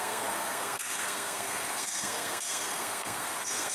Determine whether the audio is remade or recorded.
remade